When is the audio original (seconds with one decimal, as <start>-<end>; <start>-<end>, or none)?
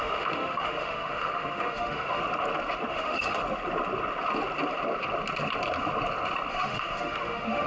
2.2-2.9; 3.4-6.5